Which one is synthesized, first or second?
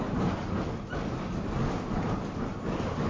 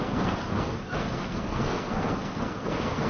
second